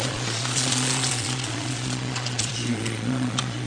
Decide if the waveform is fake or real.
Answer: fake